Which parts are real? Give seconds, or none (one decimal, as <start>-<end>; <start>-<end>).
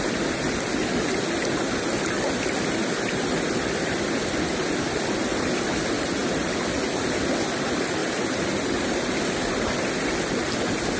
0.0-11.0